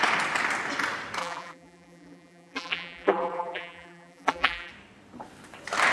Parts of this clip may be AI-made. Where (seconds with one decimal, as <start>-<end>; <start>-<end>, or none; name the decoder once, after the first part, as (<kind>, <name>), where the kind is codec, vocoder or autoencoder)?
1.2-4.7 (vocoder, BigVGAN v2)